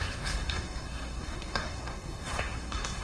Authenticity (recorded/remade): remade